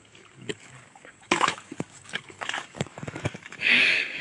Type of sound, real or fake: fake